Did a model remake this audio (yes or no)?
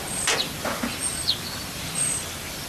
no